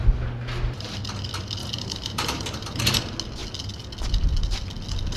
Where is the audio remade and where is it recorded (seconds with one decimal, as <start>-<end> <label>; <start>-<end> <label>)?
0.0-1.6 recorded; 1.6-2.8 remade; 2.8-5.2 recorded